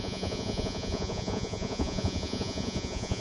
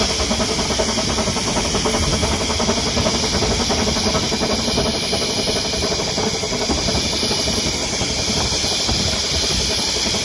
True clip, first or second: second